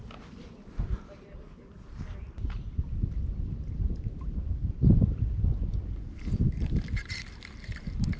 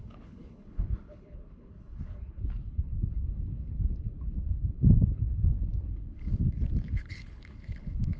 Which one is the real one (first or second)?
first